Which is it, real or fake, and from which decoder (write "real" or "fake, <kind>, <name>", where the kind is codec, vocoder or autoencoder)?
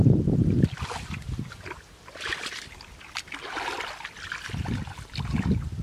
real